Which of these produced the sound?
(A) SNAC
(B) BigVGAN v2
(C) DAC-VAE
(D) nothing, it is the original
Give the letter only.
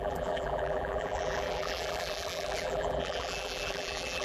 B